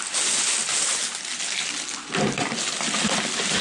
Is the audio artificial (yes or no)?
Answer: no